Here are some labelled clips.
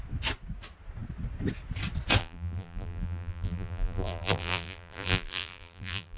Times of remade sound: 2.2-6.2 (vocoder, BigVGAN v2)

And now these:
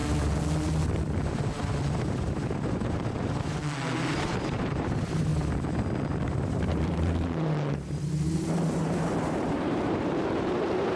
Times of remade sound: 2.0-3.6 (vocoder, BigVGAN v2); 4.1-5.3; 6.3-11.0

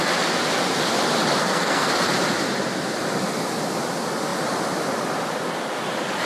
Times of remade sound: 1.4-1.9 (codec, SNAC)

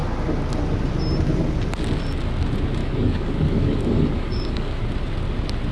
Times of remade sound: 2.8-4.8 (codec, DAC)